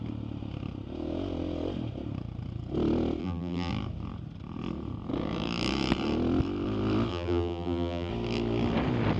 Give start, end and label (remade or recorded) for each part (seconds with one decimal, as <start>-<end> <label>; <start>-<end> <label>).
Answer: 0.0-3.2 recorded; 3.2-3.7 remade; 3.7-7.1 recorded; 7.1-8.1 remade; 8.1-9.2 recorded